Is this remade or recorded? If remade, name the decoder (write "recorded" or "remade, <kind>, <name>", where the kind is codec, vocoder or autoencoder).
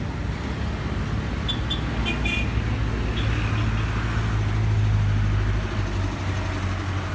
recorded